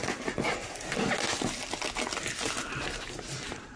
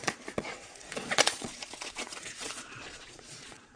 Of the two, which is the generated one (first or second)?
second